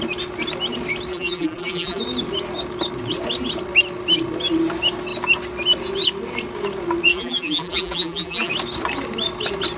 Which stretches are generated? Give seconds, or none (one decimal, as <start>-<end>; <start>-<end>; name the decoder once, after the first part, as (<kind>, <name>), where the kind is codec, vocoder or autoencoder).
1.1-2.0 (vocoder, BigVGAN v2); 7.1-8.5